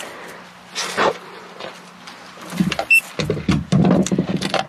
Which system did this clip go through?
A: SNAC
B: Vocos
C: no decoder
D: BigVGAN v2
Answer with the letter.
C